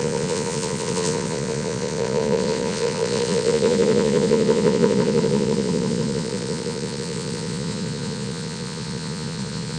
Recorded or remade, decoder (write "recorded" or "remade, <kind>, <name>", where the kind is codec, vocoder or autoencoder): remade, vocoder, Vocos